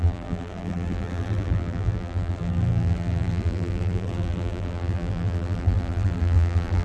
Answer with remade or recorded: remade